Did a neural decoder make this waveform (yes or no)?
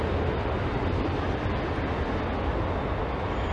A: no